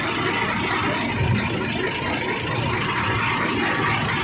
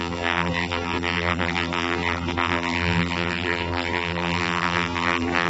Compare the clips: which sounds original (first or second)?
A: first